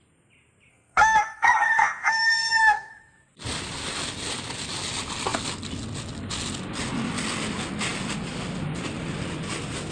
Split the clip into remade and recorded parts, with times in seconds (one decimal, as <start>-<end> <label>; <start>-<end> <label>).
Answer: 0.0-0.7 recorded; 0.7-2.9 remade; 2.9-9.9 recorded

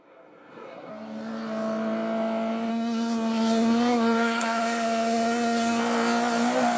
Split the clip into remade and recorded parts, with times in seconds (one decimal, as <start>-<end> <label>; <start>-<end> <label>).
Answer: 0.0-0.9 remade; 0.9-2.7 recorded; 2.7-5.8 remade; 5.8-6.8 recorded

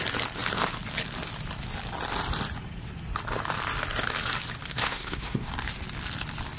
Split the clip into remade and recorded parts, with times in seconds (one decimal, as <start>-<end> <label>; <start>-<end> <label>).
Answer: 0.0-4.7 recorded; 4.7-5.5 remade; 5.5-6.6 recorded

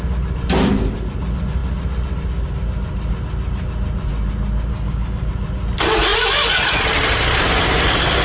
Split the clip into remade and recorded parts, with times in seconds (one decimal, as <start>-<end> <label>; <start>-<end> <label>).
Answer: 0.0-4.7 recorded; 4.7-5.3 remade; 5.3-8.2 recorded

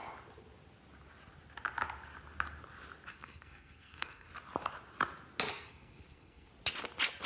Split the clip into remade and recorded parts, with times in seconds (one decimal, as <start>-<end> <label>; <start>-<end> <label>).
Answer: 0.0-3.1 recorded; 3.1-4.3 remade; 4.3-5.5 recorded; 5.5-6.5 remade; 6.5-7.3 recorded